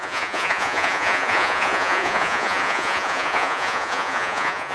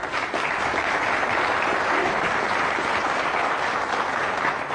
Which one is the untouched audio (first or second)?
second